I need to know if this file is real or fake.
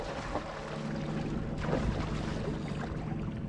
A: real